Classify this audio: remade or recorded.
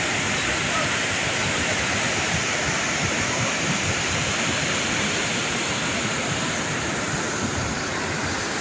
recorded